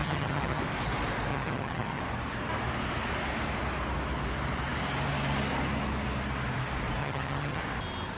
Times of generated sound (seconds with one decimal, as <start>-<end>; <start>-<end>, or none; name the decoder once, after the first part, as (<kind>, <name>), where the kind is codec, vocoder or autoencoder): 0.0-0.6 (vocoder, HiFi-GAN); 1.3-2.0; 7.0-7.6